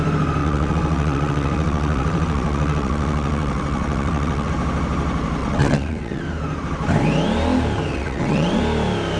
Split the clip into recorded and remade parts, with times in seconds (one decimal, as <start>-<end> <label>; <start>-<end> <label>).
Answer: 0.0-0.4 recorded; 0.4-4.5 remade; 4.5-5.4 recorded; 5.4-6.2 remade; 6.2-7.9 recorded; 7.9-8.6 remade; 8.6-9.2 recorded